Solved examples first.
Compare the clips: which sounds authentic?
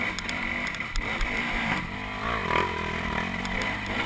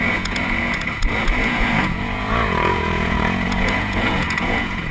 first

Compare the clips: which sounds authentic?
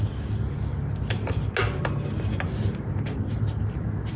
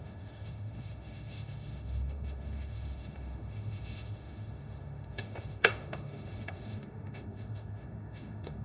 first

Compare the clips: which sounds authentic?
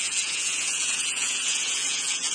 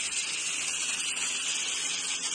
second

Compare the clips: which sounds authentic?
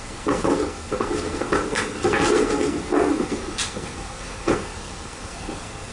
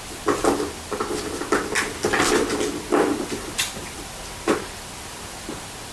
second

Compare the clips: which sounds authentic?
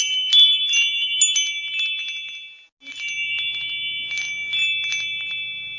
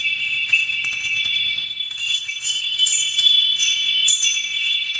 first